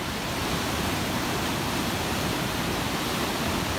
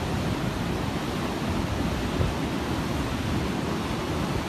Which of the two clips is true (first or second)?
second